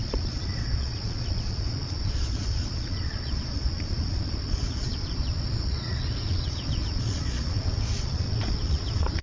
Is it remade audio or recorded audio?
remade